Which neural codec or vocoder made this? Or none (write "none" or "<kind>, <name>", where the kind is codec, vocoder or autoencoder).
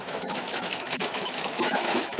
autoencoder, DAC-VAE